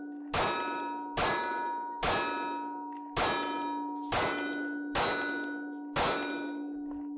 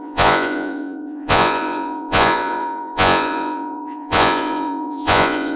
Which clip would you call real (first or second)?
first